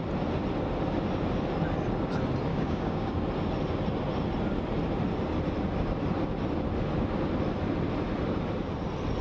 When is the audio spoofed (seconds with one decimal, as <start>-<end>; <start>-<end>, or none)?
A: 2.5-3.1